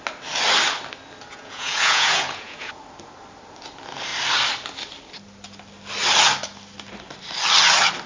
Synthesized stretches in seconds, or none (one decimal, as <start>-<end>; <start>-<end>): 1.3-2.8